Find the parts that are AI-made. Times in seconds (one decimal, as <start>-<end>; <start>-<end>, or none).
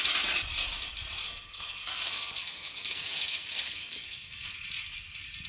1.2-4.5